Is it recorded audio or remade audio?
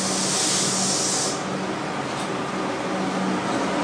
recorded